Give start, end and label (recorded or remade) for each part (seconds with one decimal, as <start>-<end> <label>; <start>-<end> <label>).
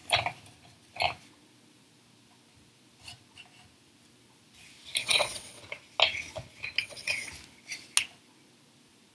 0.0-5.0 recorded; 5.0-5.6 remade; 5.6-6.8 recorded; 6.8-7.3 remade; 7.3-9.1 recorded